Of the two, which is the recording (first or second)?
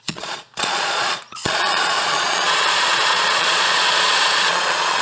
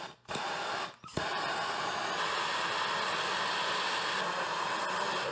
second